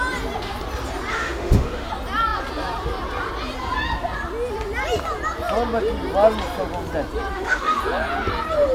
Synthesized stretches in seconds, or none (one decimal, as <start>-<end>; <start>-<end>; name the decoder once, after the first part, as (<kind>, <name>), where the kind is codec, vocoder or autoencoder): 1.1-1.9 (autoencoder, DAC-VAE); 7.3-7.8